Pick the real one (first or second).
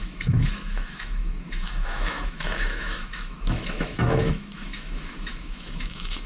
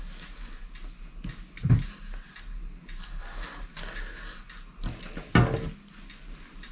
second